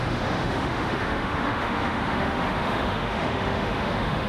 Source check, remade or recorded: remade